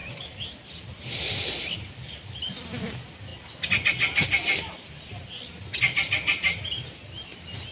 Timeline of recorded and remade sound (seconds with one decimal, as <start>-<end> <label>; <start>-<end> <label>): 0.0-1.6 remade; 1.6-7.7 recorded